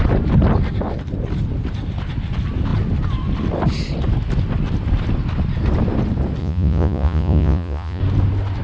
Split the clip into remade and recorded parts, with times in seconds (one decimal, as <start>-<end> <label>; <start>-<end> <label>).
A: 0.0-6.4 recorded; 6.4-8.0 remade; 8.0-8.6 recorded